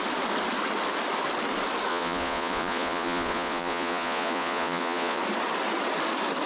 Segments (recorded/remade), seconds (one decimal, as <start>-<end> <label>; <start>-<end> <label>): 0.0-1.9 recorded; 1.9-5.2 remade; 5.2-6.5 recorded